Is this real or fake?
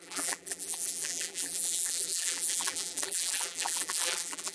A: fake